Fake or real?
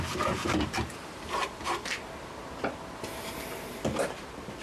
fake